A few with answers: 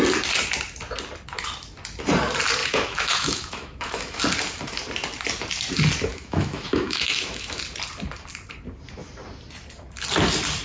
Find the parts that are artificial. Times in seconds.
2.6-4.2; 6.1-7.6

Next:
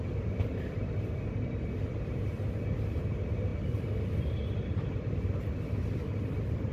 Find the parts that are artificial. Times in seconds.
none